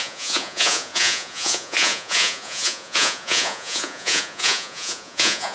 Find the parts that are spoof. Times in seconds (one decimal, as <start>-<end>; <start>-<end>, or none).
0.0-5.5